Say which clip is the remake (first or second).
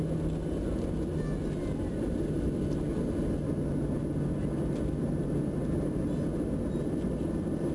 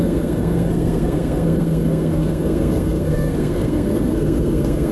second